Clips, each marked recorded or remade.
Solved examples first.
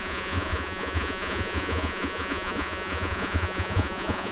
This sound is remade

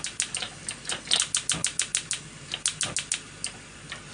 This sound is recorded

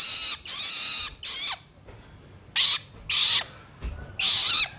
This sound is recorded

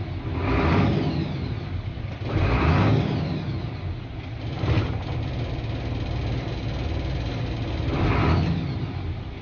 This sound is recorded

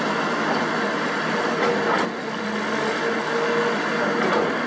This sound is recorded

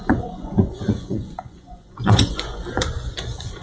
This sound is remade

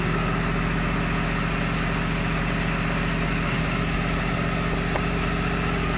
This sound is recorded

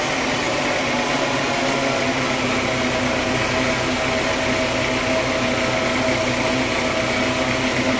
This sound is recorded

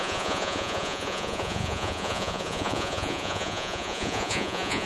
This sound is remade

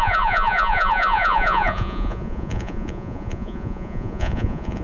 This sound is remade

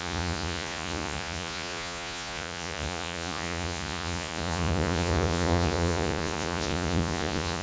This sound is remade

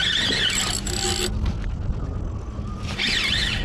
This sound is recorded